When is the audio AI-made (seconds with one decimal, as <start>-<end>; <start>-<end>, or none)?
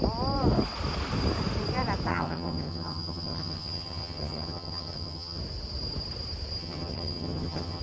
2.1-5.4; 6.6-7.8